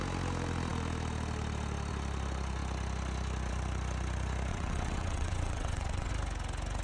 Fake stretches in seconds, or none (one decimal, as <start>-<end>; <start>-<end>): 4.5-6.1